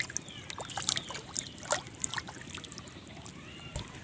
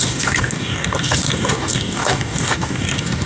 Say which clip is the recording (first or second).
first